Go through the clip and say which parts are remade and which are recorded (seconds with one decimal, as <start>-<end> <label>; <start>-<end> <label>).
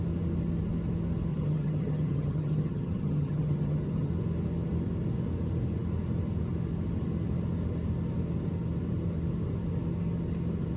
0.0-1.3 recorded; 1.3-4.1 remade; 4.1-10.8 recorded